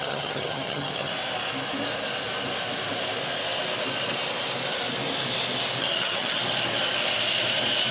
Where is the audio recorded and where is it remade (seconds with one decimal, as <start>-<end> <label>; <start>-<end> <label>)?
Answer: 0.0-1.1 remade; 1.1-5.8 recorded; 5.8-6.4 remade; 6.4-7.9 recorded